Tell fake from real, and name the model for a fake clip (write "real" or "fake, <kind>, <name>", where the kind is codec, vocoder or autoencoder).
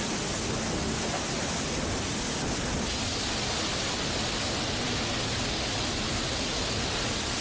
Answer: real